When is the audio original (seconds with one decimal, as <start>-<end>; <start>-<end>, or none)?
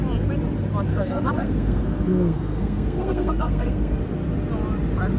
0.0-0.9; 4.0-5.2